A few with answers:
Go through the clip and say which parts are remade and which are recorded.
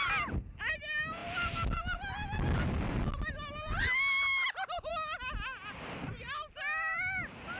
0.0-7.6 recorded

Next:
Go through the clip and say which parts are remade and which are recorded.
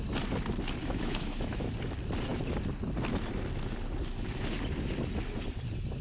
0.0-0.8 recorded; 0.8-1.7 remade; 1.7-6.0 recorded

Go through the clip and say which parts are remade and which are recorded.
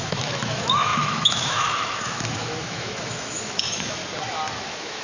0.0-4.0 remade; 4.0-4.6 recorded; 4.6-5.0 remade